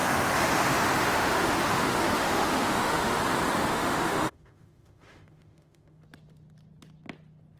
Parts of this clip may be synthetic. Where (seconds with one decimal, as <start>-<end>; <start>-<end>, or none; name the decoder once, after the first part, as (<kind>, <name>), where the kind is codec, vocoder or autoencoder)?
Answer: 0.0-3.2 (autoencoder, DAC-VAE); 3.7-6.0